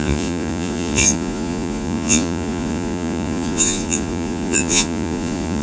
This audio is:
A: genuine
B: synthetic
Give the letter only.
B